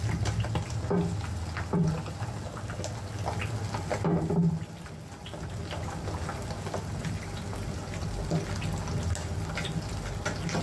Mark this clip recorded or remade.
recorded